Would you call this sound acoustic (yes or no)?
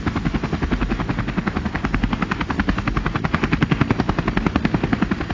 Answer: yes